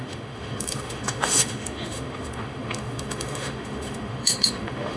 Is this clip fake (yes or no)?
yes